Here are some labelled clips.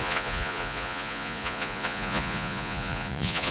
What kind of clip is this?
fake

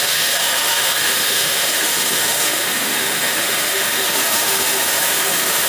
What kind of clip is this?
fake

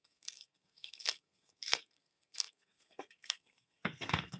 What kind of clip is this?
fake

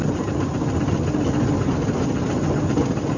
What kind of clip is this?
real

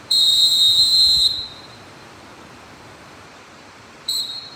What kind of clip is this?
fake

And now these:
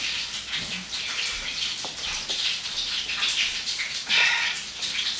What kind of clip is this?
real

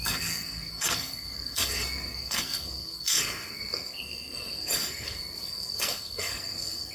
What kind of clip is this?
fake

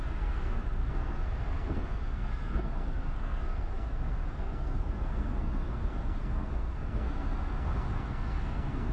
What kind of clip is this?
fake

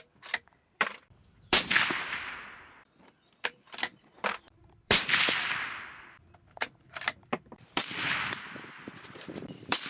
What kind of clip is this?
fake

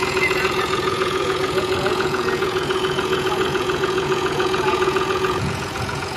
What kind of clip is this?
fake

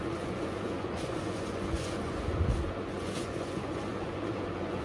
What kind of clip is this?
fake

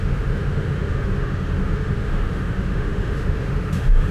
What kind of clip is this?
fake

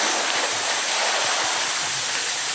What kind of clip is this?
real